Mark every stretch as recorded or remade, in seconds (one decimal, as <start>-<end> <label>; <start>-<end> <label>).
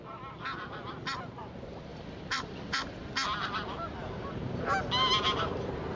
0.0-1.9 recorded; 1.9-3.1 remade; 3.1-6.0 recorded